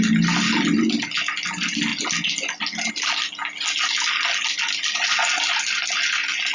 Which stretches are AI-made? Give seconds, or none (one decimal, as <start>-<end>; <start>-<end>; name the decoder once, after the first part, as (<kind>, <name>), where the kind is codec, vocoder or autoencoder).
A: none